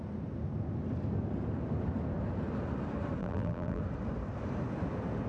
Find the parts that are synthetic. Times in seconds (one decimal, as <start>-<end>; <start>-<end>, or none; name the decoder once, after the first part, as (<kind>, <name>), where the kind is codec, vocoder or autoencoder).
3.2-3.8 (vocoder, BigVGAN v2)